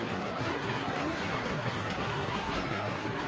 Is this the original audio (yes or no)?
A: no